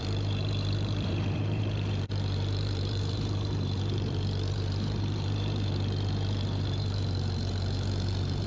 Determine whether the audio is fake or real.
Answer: fake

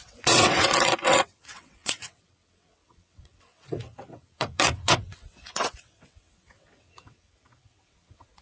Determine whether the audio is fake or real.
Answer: fake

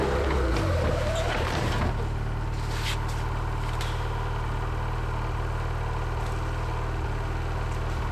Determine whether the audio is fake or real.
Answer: real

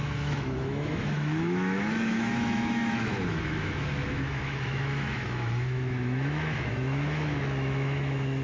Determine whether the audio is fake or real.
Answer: fake